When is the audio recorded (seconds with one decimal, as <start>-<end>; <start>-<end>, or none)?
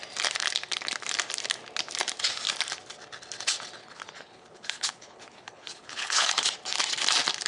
0.0-3.8; 6.5-7.5